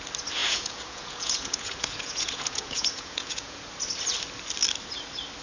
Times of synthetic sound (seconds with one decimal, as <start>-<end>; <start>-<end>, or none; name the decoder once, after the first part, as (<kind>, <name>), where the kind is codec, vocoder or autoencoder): 0.4-3.6 (vocoder, Vocos)